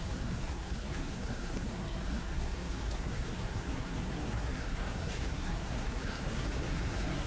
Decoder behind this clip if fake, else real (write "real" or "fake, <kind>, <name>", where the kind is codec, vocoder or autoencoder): fake, codec, SNAC